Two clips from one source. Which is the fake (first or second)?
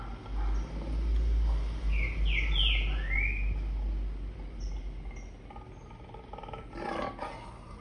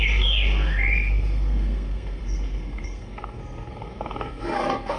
second